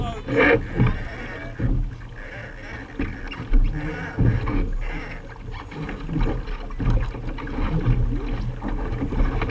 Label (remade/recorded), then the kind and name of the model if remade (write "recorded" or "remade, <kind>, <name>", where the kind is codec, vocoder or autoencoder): recorded